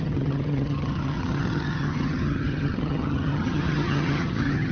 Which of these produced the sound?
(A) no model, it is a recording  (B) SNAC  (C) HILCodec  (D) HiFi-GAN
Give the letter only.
D